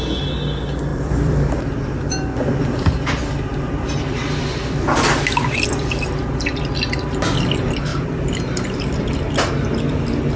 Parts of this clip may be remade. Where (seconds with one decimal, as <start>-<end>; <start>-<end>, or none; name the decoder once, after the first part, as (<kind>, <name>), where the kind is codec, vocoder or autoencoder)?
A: 0.9-2.6 (vocoder, BigVGAN v2); 3.5-7.2